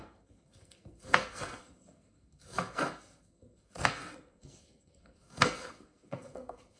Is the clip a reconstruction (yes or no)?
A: yes